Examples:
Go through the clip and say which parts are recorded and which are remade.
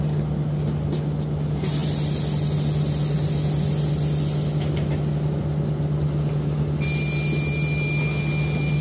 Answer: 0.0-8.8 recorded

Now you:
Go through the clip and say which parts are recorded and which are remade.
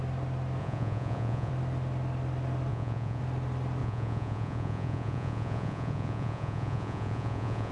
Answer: 0.0-0.6 recorded; 0.6-1.5 remade; 1.5-2.7 recorded; 2.7-3.2 remade; 3.2-3.8 recorded; 3.8-7.7 remade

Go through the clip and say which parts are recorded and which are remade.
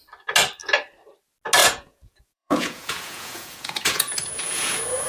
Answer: 0.0-1.6 recorded; 1.6-5.1 remade